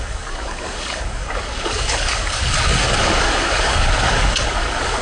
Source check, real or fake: fake